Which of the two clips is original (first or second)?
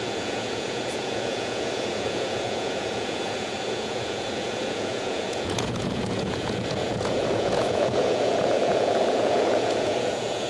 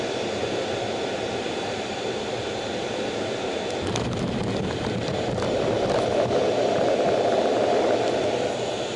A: second